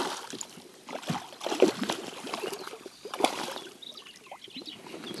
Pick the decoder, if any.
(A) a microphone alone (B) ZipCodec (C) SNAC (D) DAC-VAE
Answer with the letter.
A